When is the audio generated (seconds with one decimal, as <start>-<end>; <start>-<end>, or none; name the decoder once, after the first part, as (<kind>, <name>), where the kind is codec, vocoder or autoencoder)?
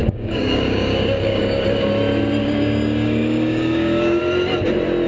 0.0-1.9 (codec, DAC); 2.4-4.2